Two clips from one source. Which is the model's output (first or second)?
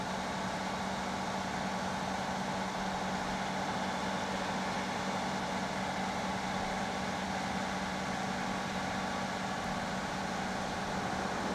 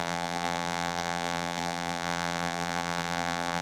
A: second